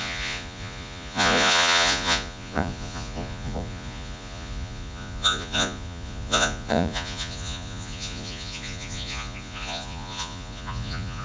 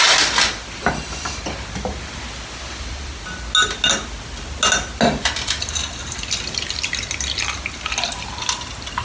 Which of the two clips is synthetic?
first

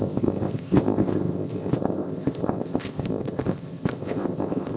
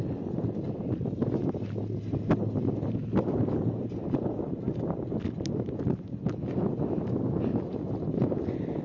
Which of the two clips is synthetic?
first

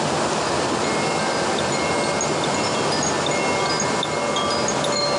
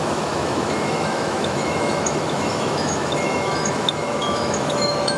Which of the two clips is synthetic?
second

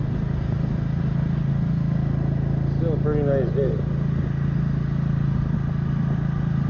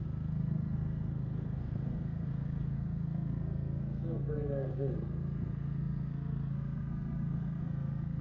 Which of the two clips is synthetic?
second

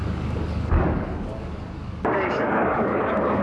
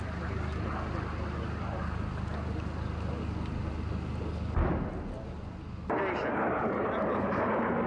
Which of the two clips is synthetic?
first